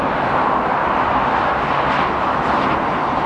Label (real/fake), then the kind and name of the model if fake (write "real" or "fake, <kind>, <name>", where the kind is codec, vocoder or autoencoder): real